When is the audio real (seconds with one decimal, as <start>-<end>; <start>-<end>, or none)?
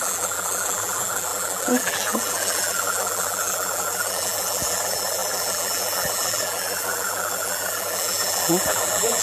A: none